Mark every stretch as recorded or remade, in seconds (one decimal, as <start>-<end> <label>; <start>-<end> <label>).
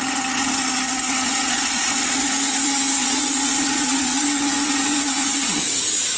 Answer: 0.0-1.3 recorded; 1.3-2.2 remade; 2.2-3.0 recorded; 3.0-4.2 remade; 4.2-6.2 recorded